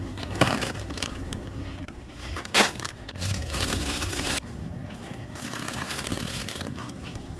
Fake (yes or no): yes